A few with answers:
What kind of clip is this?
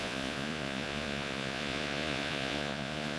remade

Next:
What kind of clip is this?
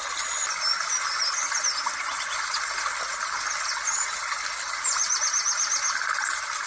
recorded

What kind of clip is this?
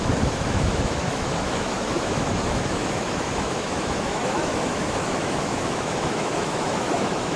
remade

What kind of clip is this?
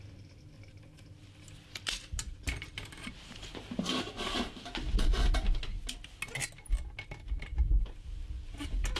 recorded